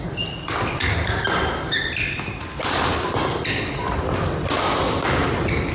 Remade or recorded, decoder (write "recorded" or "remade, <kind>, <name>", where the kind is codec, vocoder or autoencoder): recorded